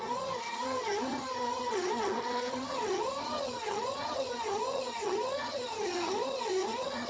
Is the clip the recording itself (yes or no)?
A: no